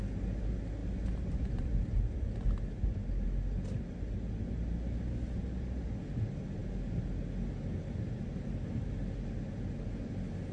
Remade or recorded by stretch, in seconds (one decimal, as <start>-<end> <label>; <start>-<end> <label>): 0.0-10.5 recorded